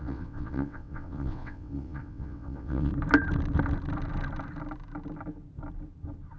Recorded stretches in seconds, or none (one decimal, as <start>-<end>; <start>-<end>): 2.9-6.4